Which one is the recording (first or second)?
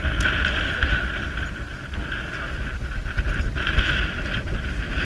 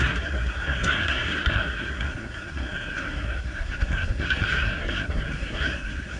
first